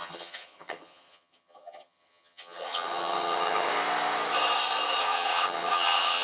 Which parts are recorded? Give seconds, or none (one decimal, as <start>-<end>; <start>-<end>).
3.7-5.0